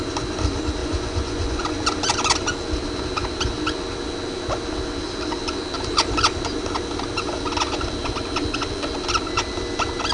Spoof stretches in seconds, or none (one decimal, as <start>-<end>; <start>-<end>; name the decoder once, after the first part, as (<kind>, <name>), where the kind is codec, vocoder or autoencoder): 0.8-1.6 (vocoder, Vocos)